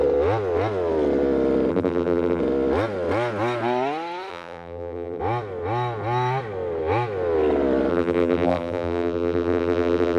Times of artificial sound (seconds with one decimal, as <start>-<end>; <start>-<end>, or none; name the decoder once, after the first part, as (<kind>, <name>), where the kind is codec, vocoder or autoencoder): 1.7-2.4 (vocoder, BigVGAN v2); 4.3-5.2; 7.9-10.2